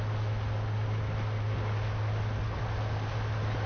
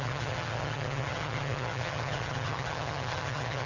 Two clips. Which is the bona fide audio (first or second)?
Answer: first